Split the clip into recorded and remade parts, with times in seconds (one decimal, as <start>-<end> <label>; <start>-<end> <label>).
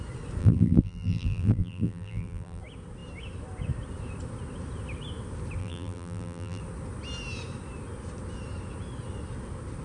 0.0-0.4 recorded; 0.4-2.6 remade; 2.6-5.6 recorded; 5.6-6.6 remade; 6.6-9.8 recorded